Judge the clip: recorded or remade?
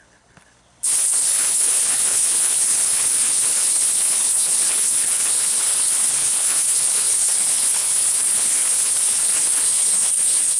remade